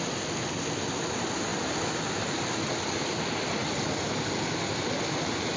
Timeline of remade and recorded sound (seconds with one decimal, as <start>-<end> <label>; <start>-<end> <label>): 0.0-5.6 recorded